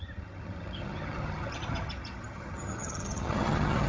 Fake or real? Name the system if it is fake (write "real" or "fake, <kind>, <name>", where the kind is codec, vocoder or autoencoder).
fake, vocoder, HiFi-GAN